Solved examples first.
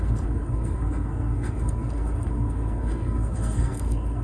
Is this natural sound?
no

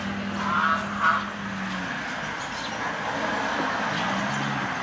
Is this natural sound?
yes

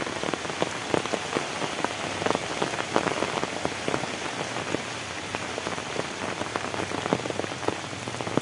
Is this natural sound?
yes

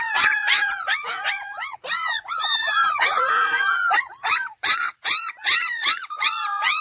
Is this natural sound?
no